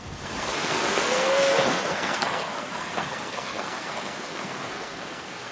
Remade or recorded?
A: remade